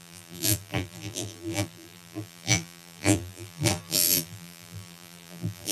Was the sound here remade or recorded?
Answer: remade